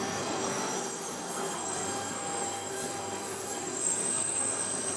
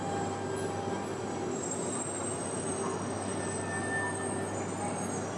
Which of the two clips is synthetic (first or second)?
first